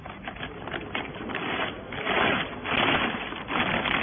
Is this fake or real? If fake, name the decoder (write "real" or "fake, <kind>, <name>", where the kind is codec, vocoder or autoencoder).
real